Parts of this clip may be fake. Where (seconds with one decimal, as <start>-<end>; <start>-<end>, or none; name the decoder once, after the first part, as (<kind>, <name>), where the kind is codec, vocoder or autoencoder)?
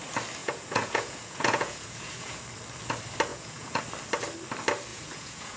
0.4-2.4 (vocoder, Vocos); 3.3-3.8; 4.9-5.6